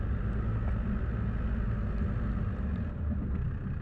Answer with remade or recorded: recorded